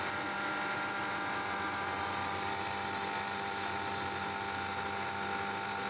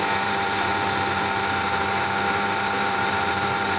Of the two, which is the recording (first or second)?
first